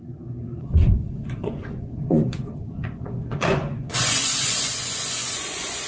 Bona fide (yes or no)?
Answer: no